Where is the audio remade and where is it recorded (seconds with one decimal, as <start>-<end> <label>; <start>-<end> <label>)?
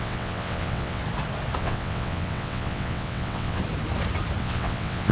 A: 0.0-1.0 remade; 1.0-1.6 recorded; 1.6-3.6 remade; 3.6-4.4 recorded; 4.4-5.1 remade